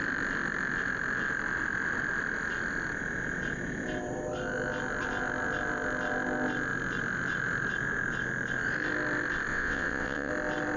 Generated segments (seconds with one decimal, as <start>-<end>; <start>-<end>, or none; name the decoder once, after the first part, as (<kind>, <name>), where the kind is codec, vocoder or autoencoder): 9.5-10.3 (vocoder, WaveNeXt)